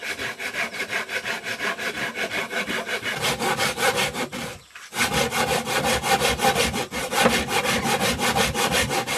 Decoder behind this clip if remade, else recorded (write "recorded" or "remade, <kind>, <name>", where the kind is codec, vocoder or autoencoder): recorded